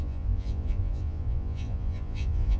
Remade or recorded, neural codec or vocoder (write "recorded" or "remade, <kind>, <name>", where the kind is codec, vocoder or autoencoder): remade, vocoder, Vocos